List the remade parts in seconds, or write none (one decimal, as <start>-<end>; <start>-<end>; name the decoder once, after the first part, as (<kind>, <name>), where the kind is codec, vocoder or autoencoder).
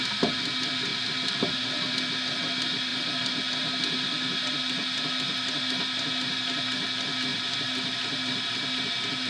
none